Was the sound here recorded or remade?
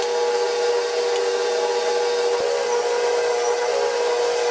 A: recorded